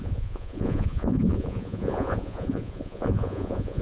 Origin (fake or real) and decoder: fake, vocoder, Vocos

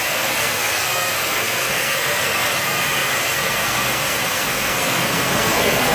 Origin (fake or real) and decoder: fake, codec, SNAC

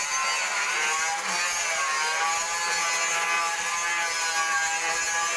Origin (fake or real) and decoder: real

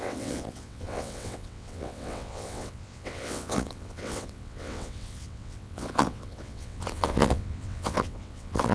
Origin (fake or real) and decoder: fake, vocoder, WaveNeXt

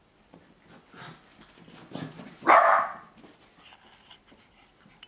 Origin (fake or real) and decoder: real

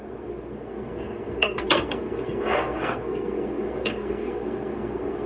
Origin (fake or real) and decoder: fake, codec, SNAC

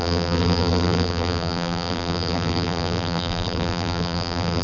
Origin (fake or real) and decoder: fake, vocoder, BigVGAN v2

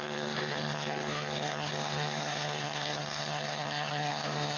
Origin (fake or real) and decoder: fake, codec, SNAC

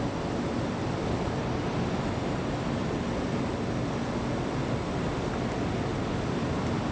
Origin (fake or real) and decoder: real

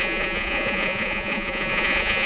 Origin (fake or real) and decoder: fake, vocoder, Vocos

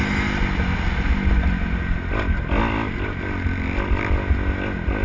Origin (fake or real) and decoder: real